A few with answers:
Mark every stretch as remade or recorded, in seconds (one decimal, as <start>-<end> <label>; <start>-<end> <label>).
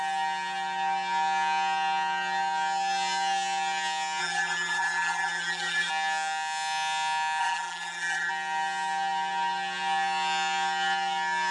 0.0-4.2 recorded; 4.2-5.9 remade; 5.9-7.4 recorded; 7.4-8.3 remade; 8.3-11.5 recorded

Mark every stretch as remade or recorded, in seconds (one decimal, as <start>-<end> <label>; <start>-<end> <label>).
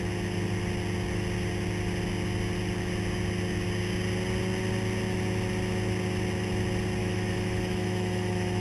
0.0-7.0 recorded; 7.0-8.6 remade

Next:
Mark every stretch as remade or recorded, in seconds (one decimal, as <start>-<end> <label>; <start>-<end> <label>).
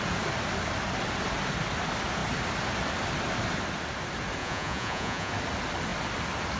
0.0-4.4 recorded; 4.4-5.3 remade; 5.3-6.6 recorded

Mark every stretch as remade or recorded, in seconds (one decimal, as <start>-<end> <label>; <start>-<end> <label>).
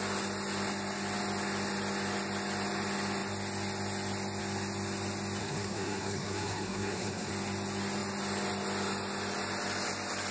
0.0-5.4 recorded; 5.4-7.3 remade; 7.3-10.3 recorded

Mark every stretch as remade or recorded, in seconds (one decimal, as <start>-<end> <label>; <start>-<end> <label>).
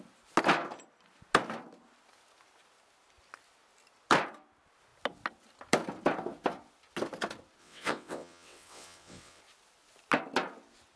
0.0-7.6 recorded; 7.6-9.4 remade; 9.4-11.0 recorded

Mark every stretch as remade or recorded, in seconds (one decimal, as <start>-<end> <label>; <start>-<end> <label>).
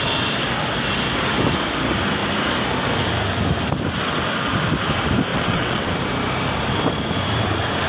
0.0-5.3 recorded; 5.3-5.9 remade; 5.9-7.9 recorded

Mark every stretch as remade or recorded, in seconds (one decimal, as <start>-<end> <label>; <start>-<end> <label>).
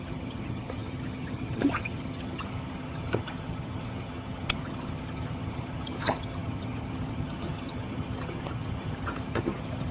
0.0-9.9 remade